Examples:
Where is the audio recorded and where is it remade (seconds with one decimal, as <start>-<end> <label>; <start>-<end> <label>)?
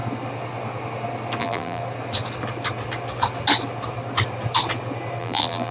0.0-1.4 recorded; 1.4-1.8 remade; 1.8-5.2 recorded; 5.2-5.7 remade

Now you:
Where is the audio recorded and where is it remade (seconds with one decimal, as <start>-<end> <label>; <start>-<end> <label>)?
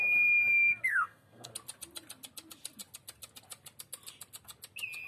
0.0-0.9 recorded; 0.9-1.5 remade; 1.5-5.1 recorded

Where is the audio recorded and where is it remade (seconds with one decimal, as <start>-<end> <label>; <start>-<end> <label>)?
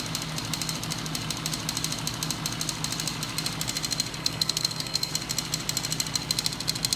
0.0-4.2 recorded; 4.2-5.1 remade; 5.1-7.0 recorded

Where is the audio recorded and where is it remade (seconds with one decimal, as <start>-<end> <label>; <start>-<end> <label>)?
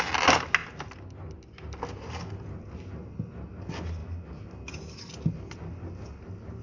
0.0-6.6 recorded